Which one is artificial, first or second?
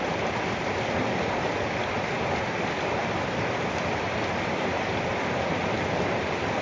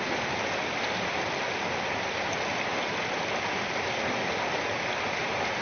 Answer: first